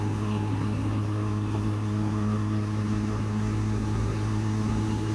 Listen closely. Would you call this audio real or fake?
fake